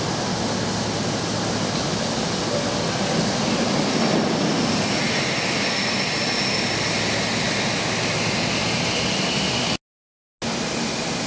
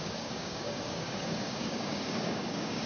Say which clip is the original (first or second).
first